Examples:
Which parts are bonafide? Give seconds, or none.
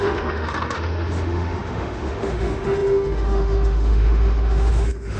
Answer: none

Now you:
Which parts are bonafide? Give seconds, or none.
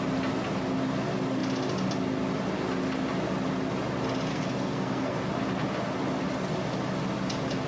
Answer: 0.0-4.3; 5.2-7.7